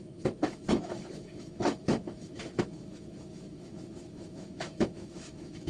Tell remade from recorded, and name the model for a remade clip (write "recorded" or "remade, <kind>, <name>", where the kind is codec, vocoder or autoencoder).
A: remade, autoencoder, DAC-VAE